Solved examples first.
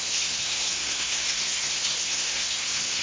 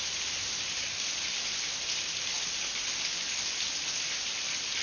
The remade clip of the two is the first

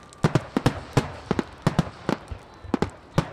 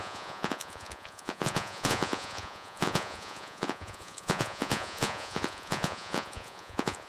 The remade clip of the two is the second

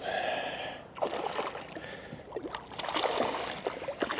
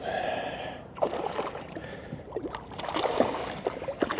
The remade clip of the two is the second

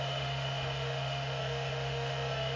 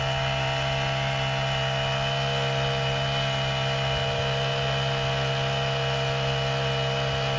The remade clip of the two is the first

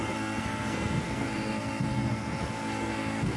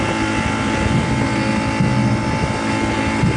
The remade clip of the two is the first